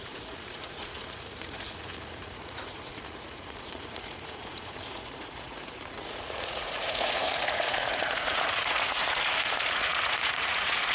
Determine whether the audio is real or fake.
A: fake